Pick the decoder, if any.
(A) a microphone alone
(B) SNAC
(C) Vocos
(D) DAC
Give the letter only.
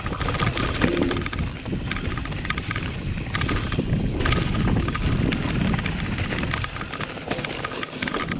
A